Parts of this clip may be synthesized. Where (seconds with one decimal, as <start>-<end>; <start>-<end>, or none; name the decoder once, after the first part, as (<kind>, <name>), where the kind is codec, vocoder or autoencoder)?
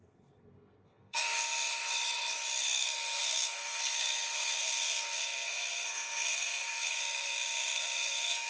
0.0-1.8 (codec, SNAC); 2.6-8.5